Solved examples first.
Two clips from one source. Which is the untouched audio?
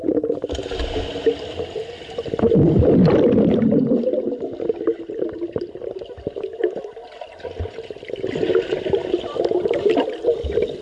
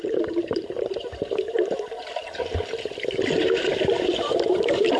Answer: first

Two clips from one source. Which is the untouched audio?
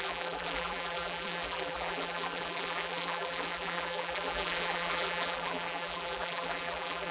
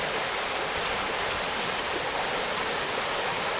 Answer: second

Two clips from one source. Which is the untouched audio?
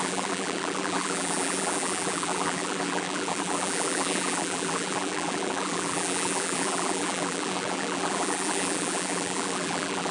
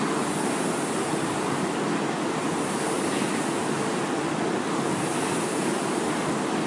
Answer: second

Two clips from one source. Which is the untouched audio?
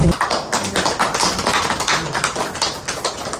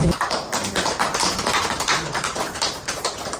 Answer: first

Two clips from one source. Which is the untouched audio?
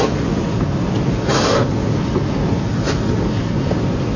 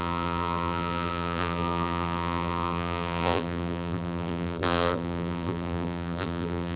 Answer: first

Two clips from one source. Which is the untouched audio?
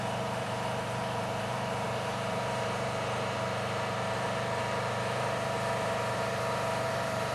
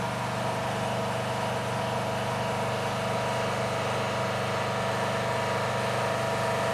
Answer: second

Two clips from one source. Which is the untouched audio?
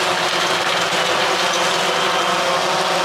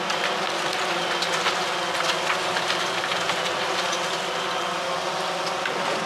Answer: first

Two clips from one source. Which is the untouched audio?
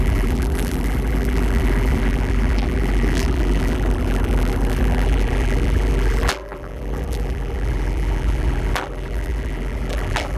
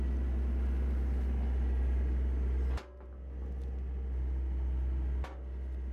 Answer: second